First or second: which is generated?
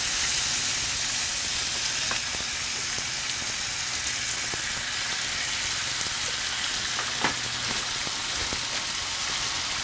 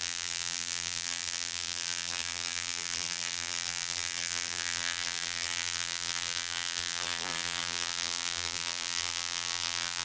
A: second